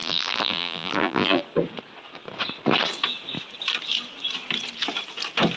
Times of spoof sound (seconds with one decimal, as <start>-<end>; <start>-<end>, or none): 0.0-1.4